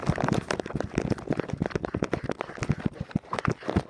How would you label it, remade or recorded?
recorded